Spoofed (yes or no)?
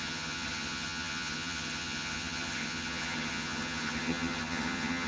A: yes